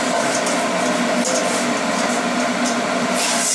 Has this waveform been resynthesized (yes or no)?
no